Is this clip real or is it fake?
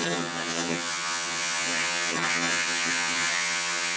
fake